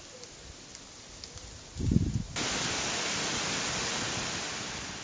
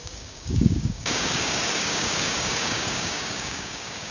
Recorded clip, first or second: first